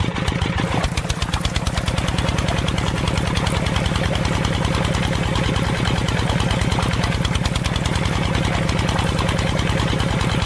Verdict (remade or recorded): recorded